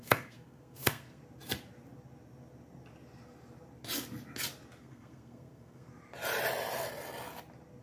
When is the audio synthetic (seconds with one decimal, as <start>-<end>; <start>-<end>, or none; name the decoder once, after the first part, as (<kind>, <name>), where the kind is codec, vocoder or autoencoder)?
0.0-1.2 (codec, SNAC); 4.8-5.9